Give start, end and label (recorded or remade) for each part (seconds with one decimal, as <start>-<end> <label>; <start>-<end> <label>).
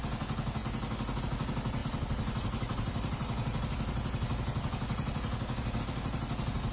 0.0-6.7 recorded